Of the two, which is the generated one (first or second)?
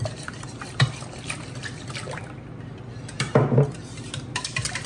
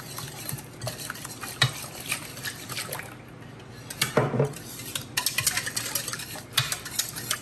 first